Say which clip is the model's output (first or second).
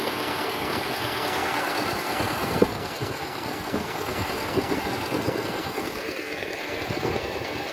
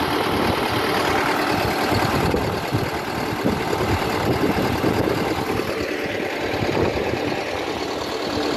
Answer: first